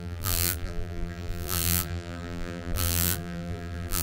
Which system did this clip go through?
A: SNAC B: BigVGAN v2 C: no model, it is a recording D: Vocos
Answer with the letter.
B